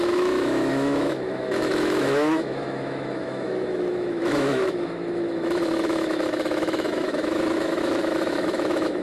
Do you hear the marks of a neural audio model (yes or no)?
yes